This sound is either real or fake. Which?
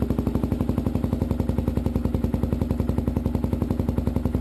real